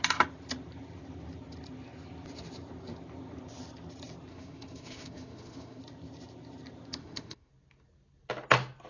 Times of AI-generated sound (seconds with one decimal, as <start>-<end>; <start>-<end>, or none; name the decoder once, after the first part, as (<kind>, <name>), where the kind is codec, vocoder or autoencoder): 4.3-5.8 (autoencoder, DAC-VAE); 7.0-7.5